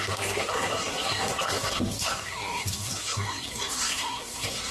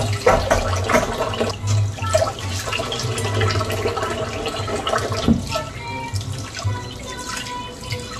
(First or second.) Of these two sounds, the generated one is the first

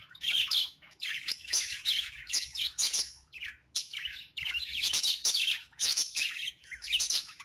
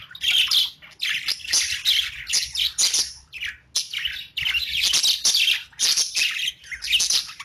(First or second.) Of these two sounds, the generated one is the first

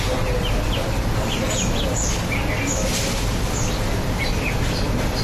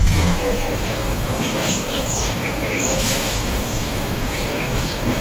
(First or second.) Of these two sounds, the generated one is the second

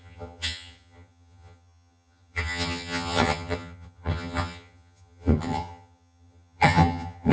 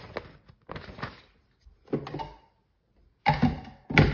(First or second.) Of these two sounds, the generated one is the first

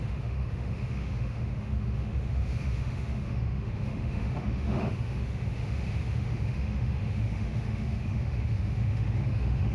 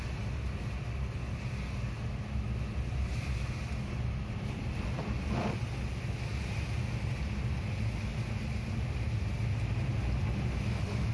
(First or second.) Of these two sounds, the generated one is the first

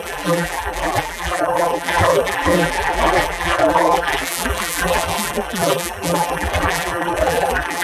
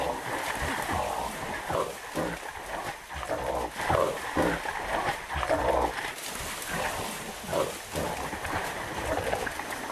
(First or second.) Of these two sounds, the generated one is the first